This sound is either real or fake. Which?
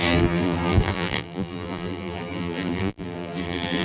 fake